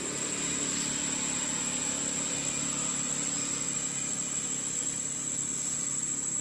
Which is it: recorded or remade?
recorded